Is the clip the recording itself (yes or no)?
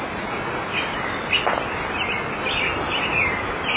yes